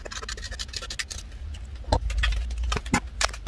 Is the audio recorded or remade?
recorded